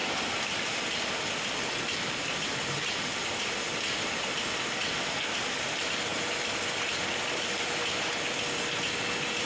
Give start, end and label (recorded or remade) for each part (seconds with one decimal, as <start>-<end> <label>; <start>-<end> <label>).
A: 0.0-9.5 recorded